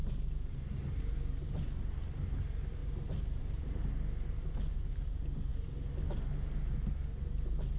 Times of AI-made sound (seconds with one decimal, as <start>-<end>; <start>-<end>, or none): none